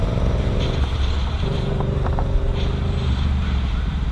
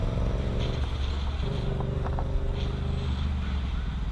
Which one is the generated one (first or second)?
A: first